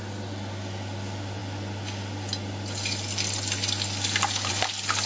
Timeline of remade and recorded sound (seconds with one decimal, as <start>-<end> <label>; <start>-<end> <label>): 0.0-5.1 recorded